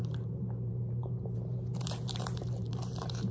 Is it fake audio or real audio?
fake